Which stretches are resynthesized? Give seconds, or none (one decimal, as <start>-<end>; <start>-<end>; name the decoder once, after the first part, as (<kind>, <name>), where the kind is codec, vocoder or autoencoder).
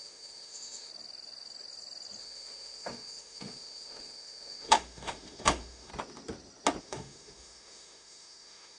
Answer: 0.0-0.9 (autoencoder, DAC-VAE); 2.2-5.9; 6.8-8.8